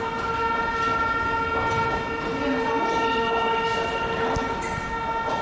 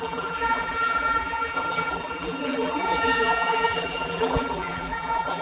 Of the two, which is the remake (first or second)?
second